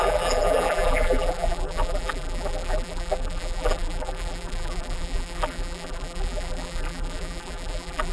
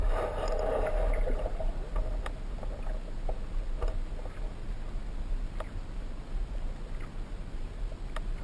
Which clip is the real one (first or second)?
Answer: second